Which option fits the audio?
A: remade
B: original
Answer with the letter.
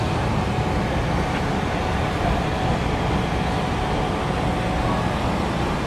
B